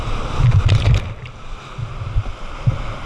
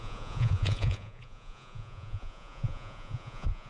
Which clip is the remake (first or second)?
second